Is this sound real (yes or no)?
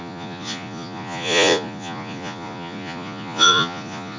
no